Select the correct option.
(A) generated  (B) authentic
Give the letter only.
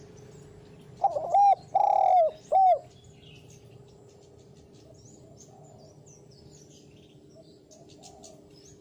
B